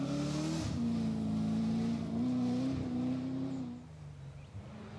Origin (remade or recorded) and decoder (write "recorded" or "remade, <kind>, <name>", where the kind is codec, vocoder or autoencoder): recorded